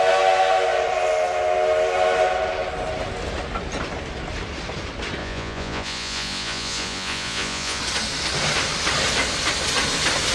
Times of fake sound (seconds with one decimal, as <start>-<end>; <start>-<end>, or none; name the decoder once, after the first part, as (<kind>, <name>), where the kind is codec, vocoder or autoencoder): 5.2-7.8 (vocoder, Vocos)